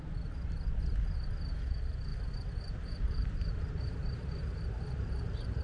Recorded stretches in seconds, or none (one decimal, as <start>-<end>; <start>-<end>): 0.0-2.1

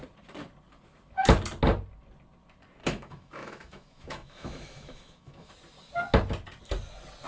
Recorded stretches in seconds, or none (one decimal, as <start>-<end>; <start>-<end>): 0.0-2.8; 5.5-7.3

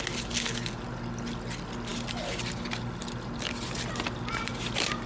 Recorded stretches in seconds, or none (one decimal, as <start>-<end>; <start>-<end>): 0.0-5.1

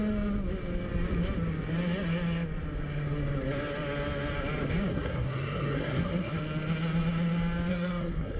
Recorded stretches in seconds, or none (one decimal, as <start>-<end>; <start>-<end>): 0.0-4.9; 6.3-7.7